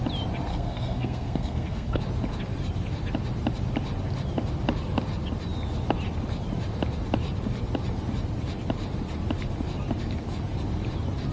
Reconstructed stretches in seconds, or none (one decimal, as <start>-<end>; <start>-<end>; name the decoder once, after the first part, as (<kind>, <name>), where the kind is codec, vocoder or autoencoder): 0.5-2.0 (codec, SNAC)